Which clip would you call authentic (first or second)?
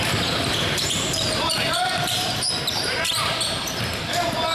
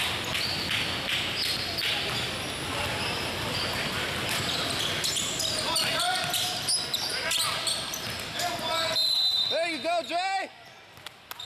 second